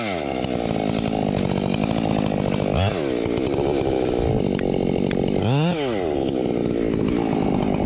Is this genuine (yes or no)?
yes